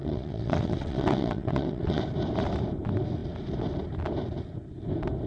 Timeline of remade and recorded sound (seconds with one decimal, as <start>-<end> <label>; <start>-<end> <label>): 0.0-2.0 remade; 2.0-5.3 recorded

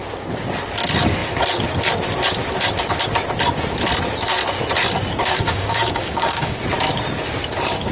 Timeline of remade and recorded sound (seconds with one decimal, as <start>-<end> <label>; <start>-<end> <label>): 0.0-5.2 recorded; 5.2-6.6 remade; 6.6-7.9 recorded

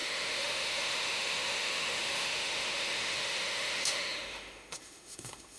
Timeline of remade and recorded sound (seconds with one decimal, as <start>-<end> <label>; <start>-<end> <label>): 0.0-5.6 remade

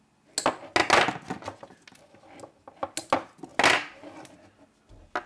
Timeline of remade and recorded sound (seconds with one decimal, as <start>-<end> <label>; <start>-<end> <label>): 0.0-5.3 recorded